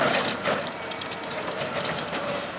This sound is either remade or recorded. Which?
remade